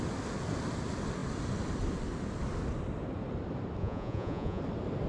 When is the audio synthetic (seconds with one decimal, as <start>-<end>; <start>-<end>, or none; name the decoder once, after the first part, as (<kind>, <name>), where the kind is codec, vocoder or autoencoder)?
3.8-4.6 (vocoder, Vocos)